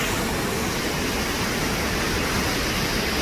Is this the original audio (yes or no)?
yes